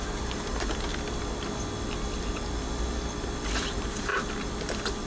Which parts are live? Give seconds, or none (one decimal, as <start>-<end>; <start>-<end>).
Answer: 0.9-3.6; 4.1-5.1